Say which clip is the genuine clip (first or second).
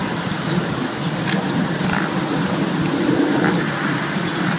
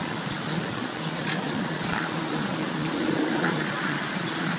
first